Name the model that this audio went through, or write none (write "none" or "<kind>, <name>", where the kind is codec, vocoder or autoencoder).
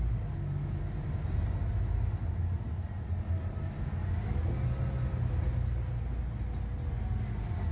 none